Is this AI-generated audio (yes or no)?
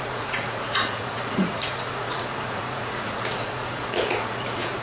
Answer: yes